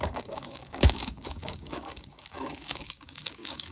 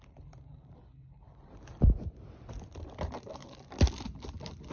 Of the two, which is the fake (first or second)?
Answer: first